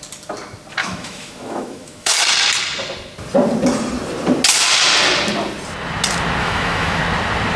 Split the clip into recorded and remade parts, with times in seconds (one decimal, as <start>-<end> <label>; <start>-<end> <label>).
0.0-0.8 recorded; 0.8-2.2 remade; 2.2-6.4 recorded; 6.4-7.0 remade; 7.0-7.6 recorded